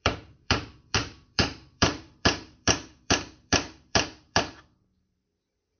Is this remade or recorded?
remade